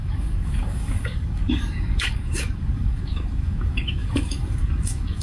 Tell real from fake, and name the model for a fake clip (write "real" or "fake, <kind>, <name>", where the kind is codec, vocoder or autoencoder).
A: fake, codec, DAC